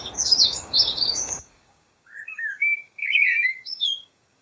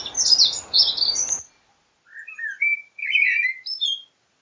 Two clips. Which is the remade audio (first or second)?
first